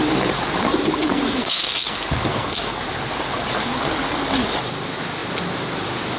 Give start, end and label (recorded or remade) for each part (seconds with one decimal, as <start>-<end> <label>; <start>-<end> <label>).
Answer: 0.0-1.1 recorded; 1.1-2.8 remade; 2.8-6.2 recorded